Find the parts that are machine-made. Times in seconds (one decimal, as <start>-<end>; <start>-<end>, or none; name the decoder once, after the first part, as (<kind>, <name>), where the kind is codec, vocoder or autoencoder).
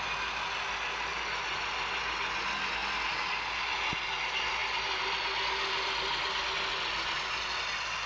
none